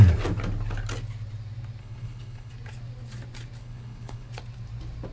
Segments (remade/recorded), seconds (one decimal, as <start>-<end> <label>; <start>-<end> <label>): 0.0-1.8 recorded; 1.8-2.5 remade; 2.5-3.6 recorded; 3.6-4.3 remade; 4.3-5.1 recorded